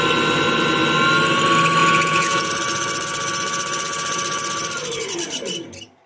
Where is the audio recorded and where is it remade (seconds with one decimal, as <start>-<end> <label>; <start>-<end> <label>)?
0.0-1.8 recorded; 1.8-2.5 remade; 2.5-6.1 recorded